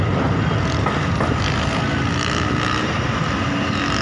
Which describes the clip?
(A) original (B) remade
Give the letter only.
A